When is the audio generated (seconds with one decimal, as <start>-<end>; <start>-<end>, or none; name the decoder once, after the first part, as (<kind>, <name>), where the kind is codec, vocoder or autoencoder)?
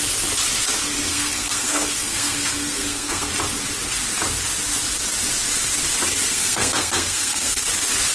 1.1-3.3 (codec, SNAC); 6.3-7.6